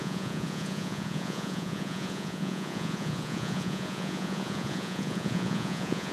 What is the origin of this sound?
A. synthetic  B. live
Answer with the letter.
A